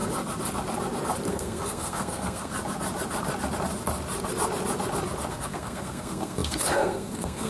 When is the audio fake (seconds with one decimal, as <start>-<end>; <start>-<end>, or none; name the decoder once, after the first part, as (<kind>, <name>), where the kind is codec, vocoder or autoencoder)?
1.3-2.5 (codec, SNAC); 5.3-7.5